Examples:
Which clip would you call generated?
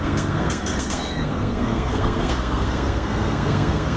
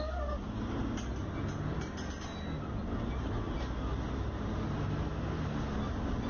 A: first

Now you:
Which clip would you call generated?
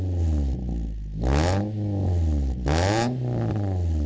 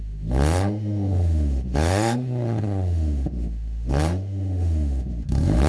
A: second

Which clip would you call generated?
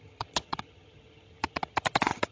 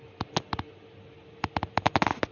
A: first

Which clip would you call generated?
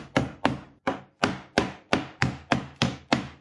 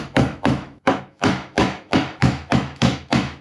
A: second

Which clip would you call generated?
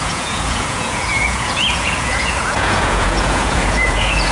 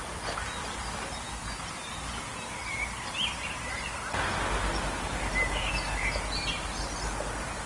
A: first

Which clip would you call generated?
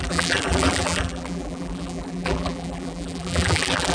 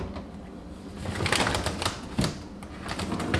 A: first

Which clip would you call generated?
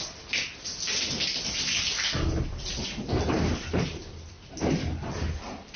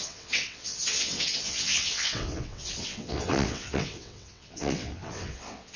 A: second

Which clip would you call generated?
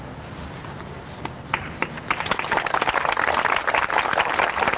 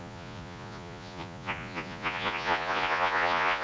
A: second